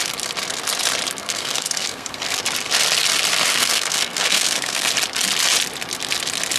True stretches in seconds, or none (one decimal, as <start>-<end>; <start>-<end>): 0.0-1.2; 2.4-3.5; 4.9-6.6

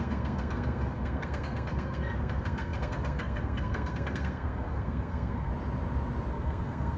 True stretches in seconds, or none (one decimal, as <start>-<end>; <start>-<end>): 5.5-6.3

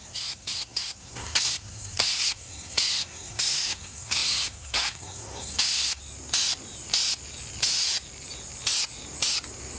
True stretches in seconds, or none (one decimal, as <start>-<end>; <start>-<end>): 6.0-9.8

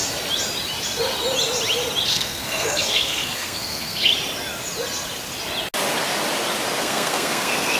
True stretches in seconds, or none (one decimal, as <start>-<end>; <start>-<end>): 0.0-2.1; 4.1-6.8

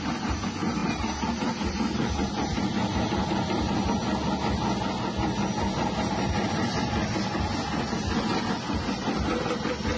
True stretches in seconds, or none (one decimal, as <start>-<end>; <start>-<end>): 0.0-10.0

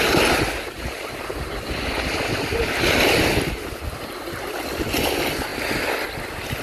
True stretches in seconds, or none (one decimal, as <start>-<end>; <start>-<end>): 0.0-6.6